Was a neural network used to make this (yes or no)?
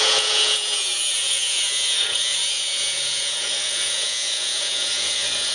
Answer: yes